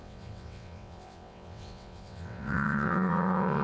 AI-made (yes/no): yes